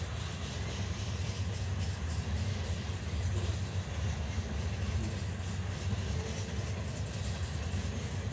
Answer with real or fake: real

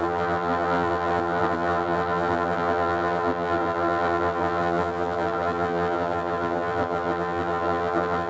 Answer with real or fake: fake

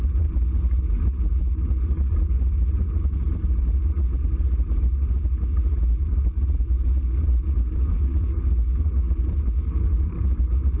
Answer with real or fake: fake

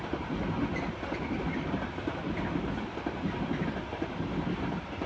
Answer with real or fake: real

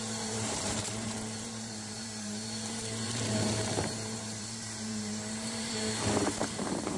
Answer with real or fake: fake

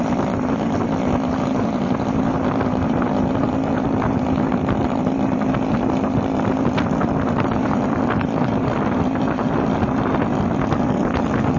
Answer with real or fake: real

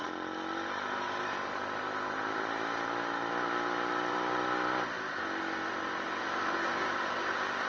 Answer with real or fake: fake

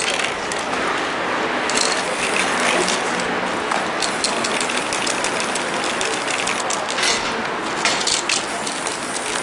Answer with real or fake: real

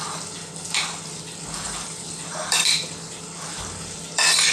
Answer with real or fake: fake